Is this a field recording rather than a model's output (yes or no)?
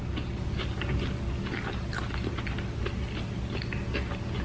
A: yes